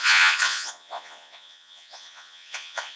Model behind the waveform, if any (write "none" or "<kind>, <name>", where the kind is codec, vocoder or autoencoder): vocoder, Vocos